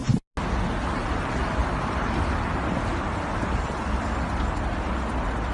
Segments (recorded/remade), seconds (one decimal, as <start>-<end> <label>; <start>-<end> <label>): 0.0-1.0 recorded; 1.0-3.7 remade; 3.7-5.5 recorded